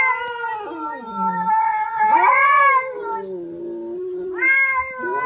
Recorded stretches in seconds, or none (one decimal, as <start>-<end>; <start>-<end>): 0.0-1.6; 2.6-5.3